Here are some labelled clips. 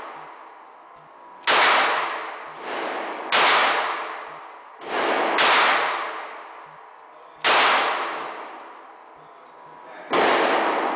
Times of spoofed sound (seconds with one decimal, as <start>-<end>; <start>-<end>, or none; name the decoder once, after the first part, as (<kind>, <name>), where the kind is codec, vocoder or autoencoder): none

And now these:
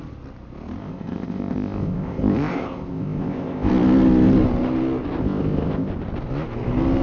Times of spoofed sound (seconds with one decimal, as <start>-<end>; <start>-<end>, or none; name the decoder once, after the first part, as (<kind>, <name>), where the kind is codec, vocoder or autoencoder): 0.8-3.7 (codec, ZipCodec); 5.2-5.9

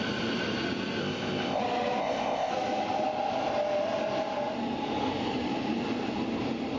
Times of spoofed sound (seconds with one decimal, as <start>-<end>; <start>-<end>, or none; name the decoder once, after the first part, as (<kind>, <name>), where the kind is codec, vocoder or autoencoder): 1.0-1.6 (codec, ZipCodec); 2.0-2.5